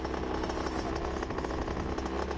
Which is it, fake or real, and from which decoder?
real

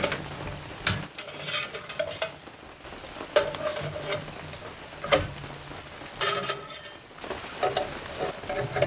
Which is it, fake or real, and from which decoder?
real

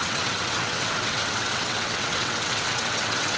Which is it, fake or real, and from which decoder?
fake, vocoder, WaveNeXt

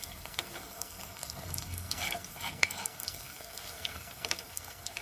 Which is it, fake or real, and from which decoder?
fake, codec, SNAC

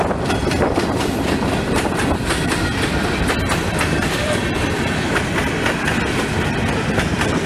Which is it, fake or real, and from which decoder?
fake, vocoder, BigVGAN v2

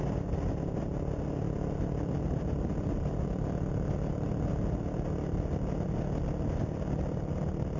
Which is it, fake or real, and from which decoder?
real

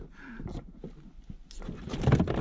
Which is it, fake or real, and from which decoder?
real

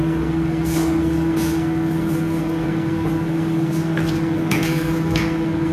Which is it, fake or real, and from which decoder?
fake, codec, SNAC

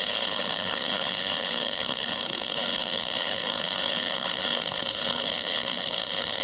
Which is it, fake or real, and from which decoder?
fake, codec, HILCodec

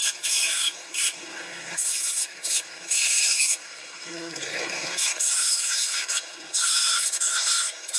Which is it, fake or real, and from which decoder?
fake, codec, SNAC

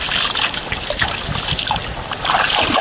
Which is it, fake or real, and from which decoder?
real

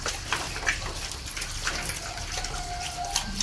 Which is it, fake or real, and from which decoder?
real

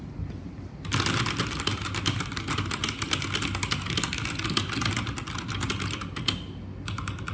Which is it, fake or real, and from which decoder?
real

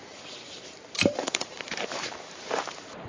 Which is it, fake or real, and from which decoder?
fake, vocoder, BigVGAN v2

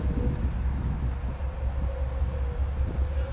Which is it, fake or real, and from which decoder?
real